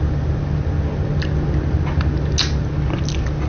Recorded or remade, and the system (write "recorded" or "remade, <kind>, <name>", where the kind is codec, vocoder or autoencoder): recorded